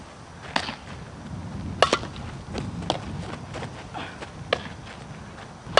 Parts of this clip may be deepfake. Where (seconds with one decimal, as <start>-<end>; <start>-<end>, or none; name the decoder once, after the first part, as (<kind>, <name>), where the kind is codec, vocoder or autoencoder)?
none